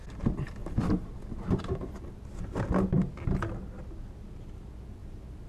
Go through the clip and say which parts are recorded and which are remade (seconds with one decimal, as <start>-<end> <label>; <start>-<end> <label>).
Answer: 0.0-5.5 recorded